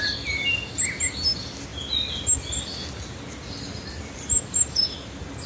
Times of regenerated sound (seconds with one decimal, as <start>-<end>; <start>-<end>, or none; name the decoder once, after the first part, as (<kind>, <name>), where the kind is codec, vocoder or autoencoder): none